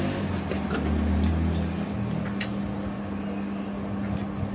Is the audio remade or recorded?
recorded